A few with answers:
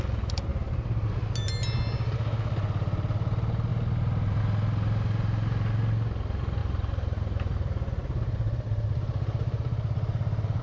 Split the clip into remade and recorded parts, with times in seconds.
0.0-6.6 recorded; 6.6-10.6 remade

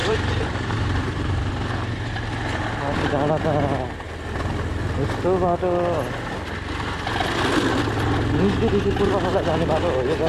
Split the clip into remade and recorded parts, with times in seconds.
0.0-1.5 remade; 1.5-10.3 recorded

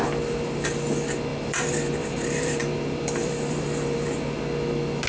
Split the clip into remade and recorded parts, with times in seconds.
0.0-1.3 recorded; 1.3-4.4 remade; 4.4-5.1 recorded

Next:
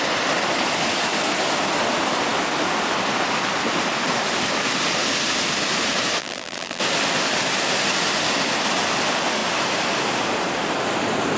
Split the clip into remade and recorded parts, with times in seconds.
0.0-6.2 recorded; 6.2-6.8 remade; 6.8-11.4 recorded

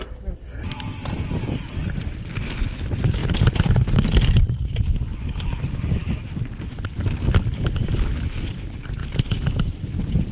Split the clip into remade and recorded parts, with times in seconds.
0.0-3.2 recorded; 3.2-4.8 remade; 4.8-10.3 recorded